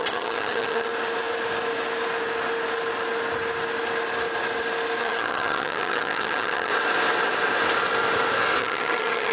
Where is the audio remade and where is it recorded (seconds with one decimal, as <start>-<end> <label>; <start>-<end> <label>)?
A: 0.0-0.9 remade; 0.9-5.0 recorded; 5.0-6.7 remade; 6.7-8.6 recorded; 8.6-9.3 remade